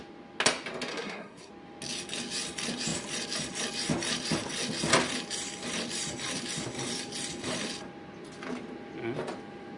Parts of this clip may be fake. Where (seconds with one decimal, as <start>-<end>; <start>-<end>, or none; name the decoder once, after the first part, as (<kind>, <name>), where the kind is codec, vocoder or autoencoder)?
0.9-1.5 (codec, SNAC)